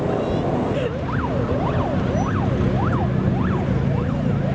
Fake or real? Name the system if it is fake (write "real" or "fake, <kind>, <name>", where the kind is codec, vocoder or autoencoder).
real